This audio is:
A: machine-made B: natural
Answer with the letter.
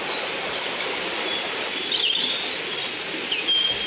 B